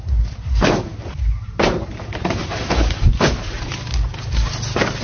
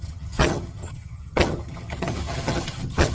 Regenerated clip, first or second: second